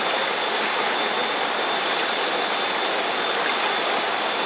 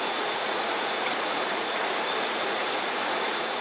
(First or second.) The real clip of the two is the first